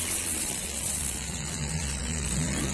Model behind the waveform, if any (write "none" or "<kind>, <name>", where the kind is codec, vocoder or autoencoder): vocoder, Vocos